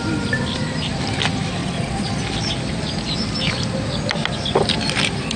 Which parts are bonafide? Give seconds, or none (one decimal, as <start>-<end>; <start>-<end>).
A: 0.0-1.6; 2.2-5.4